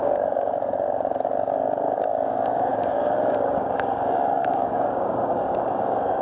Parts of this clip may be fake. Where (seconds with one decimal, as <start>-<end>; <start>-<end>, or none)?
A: 0.0-6.2